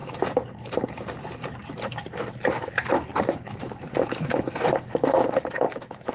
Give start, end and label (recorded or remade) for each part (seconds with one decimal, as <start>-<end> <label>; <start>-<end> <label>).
0.0-2.6 recorded; 2.6-6.1 remade